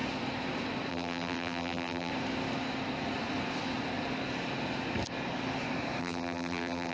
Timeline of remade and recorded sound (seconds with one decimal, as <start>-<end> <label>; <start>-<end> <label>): 0.0-0.9 recorded; 0.9-2.1 remade; 2.1-6.0 recorded; 6.0-6.9 remade